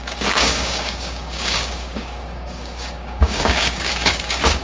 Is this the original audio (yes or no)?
no